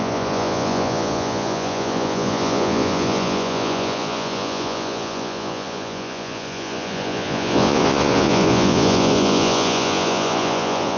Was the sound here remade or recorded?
remade